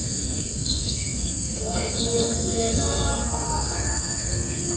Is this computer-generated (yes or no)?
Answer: yes